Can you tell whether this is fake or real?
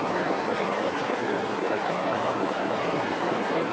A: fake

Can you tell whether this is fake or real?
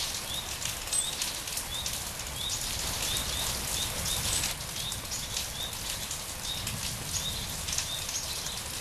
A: real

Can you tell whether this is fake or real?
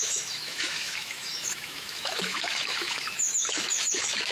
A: fake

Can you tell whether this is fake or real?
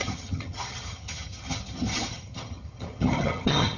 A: fake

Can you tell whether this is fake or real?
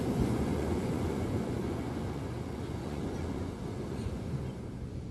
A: fake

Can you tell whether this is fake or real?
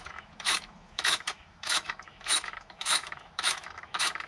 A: fake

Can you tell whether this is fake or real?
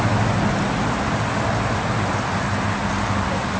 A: real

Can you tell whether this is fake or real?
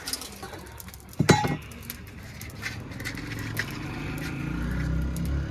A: real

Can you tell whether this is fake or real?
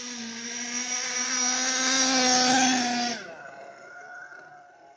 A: real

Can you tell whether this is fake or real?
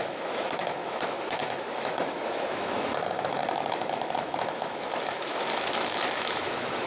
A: fake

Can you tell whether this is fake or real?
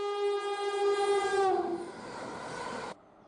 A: real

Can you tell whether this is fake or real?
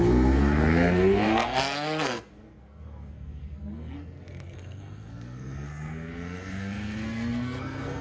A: fake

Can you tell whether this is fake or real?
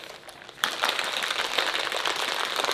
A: real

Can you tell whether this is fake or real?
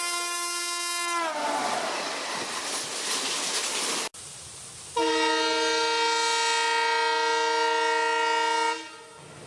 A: real